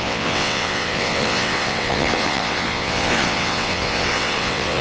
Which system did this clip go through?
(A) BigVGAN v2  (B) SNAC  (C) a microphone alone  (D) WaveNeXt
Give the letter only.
D